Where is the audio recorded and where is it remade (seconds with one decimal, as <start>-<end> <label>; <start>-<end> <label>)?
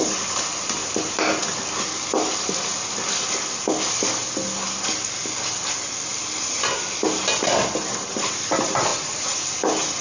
0.0-8.9 recorded; 8.9-9.4 remade; 9.4-10.0 recorded